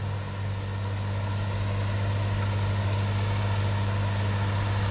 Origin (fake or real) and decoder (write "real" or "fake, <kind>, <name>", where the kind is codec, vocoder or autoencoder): real